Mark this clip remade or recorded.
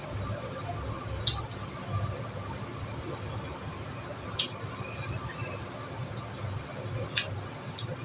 recorded